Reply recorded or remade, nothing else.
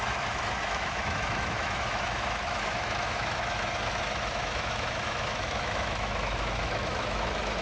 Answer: remade